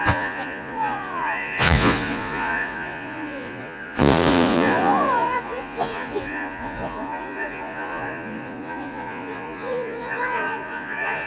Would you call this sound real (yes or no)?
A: no